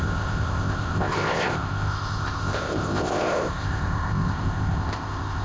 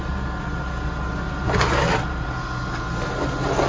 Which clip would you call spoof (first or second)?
first